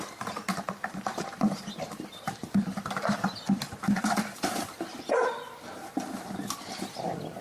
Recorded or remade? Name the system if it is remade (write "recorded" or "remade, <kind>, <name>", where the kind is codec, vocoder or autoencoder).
remade, vocoder, BigVGAN v2